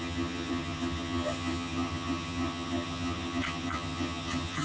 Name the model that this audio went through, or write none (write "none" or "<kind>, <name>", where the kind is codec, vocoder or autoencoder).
vocoder, HiFi-GAN